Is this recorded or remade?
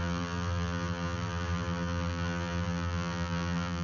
remade